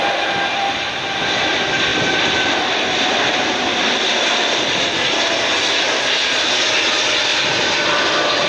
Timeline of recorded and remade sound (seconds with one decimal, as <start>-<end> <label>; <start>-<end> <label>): 0.0-1.9 recorded; 1.9-6.7 remade; 6.7-7.3 recorded; 7.3-8.0 remade; 8.0-8.5 recorded